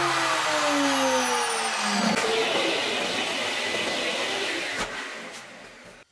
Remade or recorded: recorded